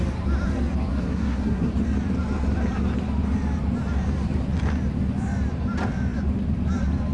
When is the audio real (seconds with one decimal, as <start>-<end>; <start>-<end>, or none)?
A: 0.0-0.9; 1.7-7.1